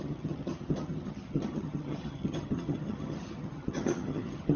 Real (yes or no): no